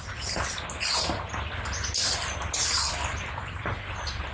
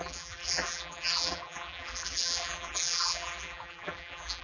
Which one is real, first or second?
first